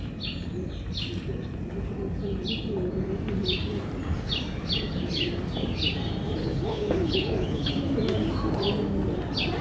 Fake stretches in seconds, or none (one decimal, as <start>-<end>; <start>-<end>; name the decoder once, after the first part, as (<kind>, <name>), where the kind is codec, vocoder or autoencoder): 6.4-7.7 (codec, HILCodec)

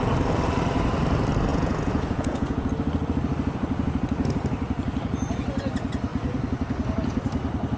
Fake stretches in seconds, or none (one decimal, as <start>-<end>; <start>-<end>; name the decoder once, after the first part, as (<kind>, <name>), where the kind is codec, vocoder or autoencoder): 1.5-2.7 (vocoder, Vocos)

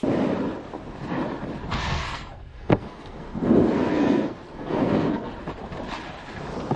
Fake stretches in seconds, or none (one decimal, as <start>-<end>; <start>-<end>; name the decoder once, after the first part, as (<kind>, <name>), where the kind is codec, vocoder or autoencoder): 1.7-5.3 (codec, SNAC)

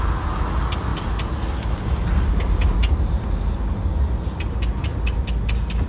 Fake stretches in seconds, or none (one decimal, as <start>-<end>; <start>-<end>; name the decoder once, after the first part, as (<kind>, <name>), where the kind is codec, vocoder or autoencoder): none

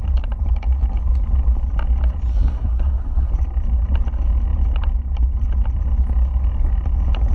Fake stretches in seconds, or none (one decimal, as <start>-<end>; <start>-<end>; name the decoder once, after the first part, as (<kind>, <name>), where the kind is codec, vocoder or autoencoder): 2.3-3.3 (codec, SNAC)

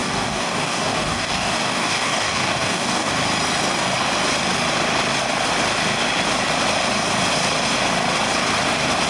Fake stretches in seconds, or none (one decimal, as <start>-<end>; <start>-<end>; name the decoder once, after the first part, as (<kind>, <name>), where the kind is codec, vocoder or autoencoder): 0.0-3.1 (codec, DAC)

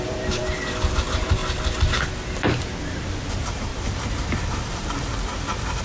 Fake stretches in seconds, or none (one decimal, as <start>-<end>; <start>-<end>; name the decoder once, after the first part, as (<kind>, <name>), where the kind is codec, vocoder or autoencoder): 0.0-0.4 (vocoder, BigVGAN v2); 0.9-1.4; 3.3-3.7; 4.5-5.1